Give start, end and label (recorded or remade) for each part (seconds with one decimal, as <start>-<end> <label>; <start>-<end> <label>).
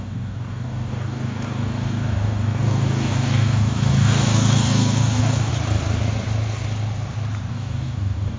0.0-5.5 remade; 5.5-7.5 recorded; 7.5-8.4 remade